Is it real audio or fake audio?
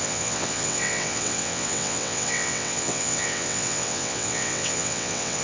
fake